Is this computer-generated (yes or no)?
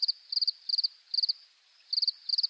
no